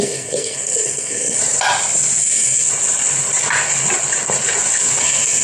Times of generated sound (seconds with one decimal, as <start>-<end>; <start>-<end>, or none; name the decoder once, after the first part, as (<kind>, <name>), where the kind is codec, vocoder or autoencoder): 0.0-1.4 (codec, SNAC); 2.2-2.7; 5.0-5.4